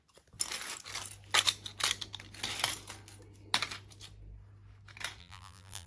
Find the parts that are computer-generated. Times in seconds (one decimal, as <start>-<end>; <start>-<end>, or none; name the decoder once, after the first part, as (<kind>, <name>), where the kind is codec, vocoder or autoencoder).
5.2-5.9 (vocoder, BigVGAN v2)